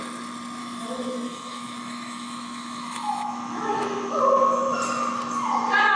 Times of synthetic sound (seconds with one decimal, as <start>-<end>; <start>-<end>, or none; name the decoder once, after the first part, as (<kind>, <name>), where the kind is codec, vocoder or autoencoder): 0.6-4.2 (autoencoder, DAC-VAE)